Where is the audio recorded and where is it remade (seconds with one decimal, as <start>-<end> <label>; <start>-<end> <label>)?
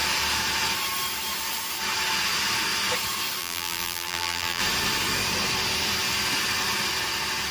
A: 0.0-3.4 recorded; 3.4-4.6 remade; 4.6-7.5 recorded